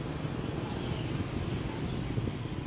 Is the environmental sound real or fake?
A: real